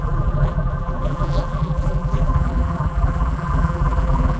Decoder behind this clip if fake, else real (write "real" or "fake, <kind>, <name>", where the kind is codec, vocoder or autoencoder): fake, vocoder, BigVGAN v2